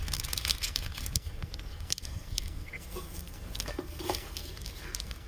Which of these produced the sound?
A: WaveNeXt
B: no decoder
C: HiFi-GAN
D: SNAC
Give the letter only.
D